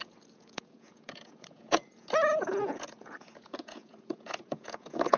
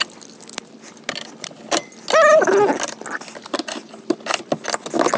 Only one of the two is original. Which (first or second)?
second